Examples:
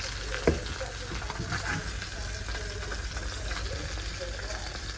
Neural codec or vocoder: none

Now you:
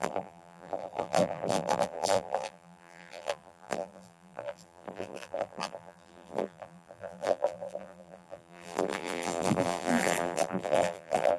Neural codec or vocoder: vocoder, BigVGAN v2